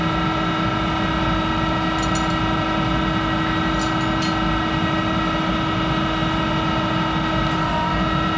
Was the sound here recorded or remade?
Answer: recorded